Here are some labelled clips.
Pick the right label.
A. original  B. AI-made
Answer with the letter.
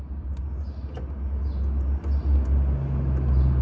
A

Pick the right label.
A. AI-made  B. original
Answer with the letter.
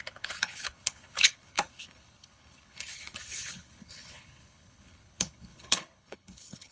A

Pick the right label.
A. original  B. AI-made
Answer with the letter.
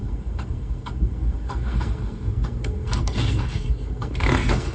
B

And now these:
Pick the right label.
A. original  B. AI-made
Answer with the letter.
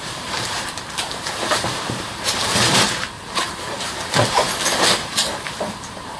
B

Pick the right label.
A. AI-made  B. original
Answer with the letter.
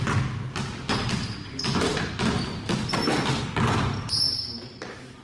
B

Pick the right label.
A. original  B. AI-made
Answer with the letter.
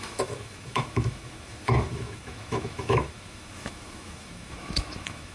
B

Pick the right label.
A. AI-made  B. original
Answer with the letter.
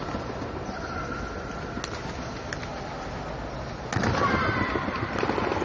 B